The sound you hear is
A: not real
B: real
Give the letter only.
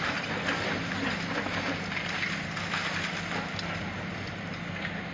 B